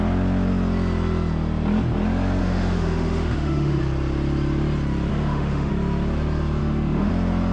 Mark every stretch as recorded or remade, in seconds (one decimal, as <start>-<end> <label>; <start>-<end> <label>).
0.0-2.4 recorded; 2.4-3.8 remade; 3.8-5.1 recorded; 5.1-5.7 remade; 5.7-6.6 recorded; 6.6-7.1 remade; 7.1-7.5 recorded